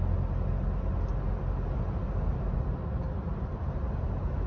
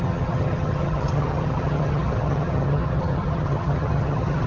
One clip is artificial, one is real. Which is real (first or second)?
first